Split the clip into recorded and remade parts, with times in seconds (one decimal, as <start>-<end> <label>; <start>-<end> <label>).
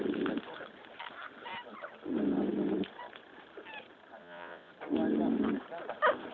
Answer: 0.0-4.2 recorded; 4.2-4.7 remade; 4.7-6.3 recorded